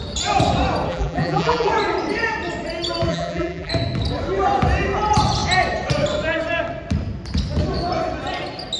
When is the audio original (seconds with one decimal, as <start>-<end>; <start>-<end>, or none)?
0.0-0.9; 1.7-3.1; 3.7-8.8

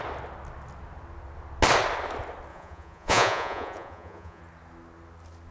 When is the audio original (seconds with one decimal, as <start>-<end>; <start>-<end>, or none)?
0.0-2.5; 4.4-5.5

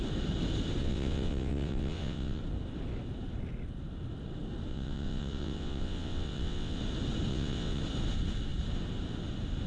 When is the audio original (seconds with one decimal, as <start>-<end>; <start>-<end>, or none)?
0.0-0.8; 2.4-4.7; 6.8-7.3; 7.8-9.7

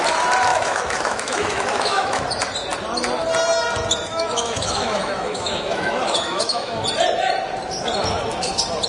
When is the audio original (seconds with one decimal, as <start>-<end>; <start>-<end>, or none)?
0.0-0.5; 2.2-4.1; 6.8-8.9

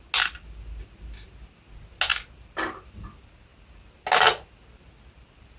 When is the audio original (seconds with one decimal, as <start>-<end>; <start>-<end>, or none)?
0.0-5.6

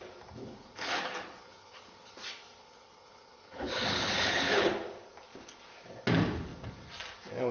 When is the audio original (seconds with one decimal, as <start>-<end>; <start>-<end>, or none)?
0.0-0.4; 2.1-2.6; 4.7-7.5